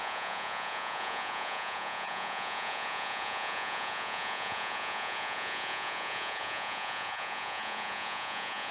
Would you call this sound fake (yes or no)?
yes